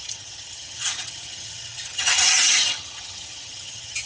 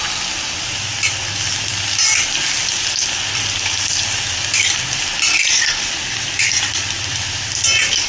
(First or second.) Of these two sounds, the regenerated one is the first